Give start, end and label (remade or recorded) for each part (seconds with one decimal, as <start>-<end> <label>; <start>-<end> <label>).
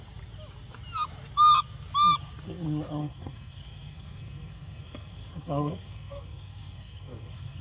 0.0-3.0 recorded; 3.0-7.6 remade